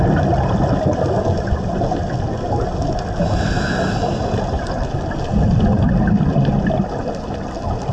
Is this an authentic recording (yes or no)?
yes